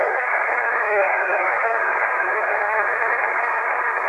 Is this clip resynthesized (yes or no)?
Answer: yes